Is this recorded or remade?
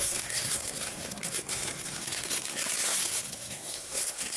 remade